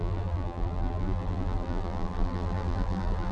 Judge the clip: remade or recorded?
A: remade